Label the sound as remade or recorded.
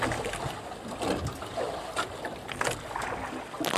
recorded